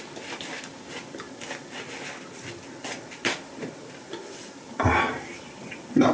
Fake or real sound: real